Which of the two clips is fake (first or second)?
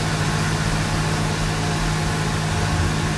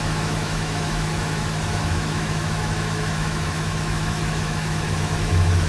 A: second